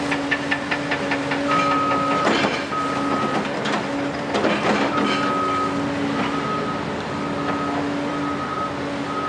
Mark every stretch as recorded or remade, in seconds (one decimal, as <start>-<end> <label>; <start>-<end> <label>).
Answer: 0.0-9.3 recorded